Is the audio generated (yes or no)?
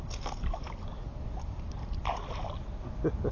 no